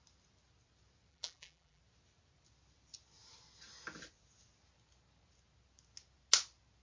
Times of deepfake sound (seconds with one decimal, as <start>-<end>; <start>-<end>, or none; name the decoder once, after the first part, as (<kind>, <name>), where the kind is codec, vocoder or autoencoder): 1.1-1.8 (vocoder, BigVGAN v2)